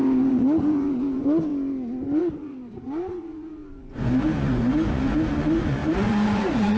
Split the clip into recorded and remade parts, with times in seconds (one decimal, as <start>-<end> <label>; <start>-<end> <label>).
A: 0.0-1.5 remade; 1.5-2.2 recorded; 2.2-6.8 remade